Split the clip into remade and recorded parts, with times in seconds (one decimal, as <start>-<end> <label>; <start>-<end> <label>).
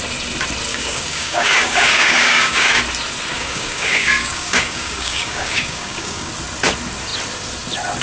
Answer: 0.0-0.7 recorded; 0.7-2.8 remade; 2.8-3.3 recorded; 3.3-6.3 remade; 6.3-8.0 recorded